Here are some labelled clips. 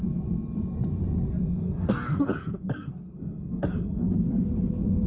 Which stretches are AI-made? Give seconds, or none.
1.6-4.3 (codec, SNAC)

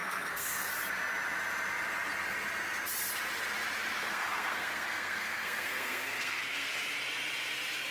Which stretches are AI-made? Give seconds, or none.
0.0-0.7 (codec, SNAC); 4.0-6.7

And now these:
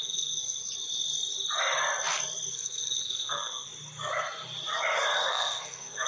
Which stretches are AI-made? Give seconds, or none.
0.0-0.6 (codec, SNAC); 2.5-3.7; 5.3-6.1